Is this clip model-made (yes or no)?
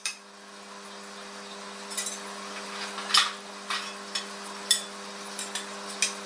no